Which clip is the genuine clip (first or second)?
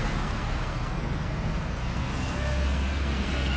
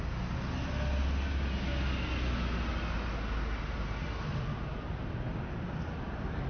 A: second